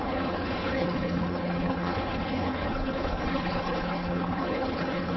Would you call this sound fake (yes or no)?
yes